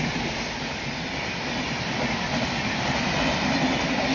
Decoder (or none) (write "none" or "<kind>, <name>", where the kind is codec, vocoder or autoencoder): none